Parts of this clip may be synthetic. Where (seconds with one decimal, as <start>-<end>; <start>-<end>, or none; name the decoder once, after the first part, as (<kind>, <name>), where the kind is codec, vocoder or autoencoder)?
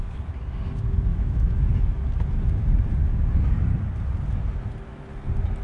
1.1-1.7 (autoencoder, DAC-VAE)